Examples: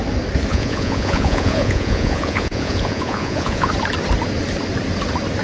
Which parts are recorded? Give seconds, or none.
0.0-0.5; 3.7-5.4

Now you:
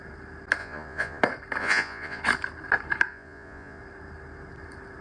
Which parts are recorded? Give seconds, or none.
0.0-0.6; 1.2-1.6; 2.2-3.1; 3.8-5.0